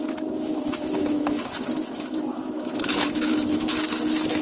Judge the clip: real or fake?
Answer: fake